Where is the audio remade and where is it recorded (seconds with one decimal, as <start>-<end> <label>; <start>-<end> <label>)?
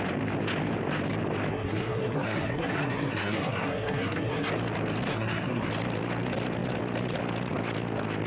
0.0-1.5 recorded; 1.5-4.5 remade; 4.5-5.1 recorded; 5.1-5.7 remade; 5.7-8.3 recorded